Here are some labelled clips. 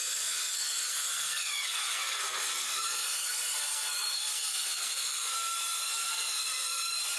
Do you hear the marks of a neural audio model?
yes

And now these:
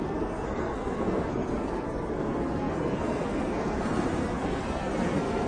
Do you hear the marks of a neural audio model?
yes